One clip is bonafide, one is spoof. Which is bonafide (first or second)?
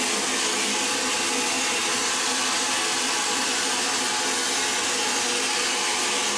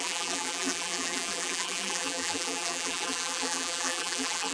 first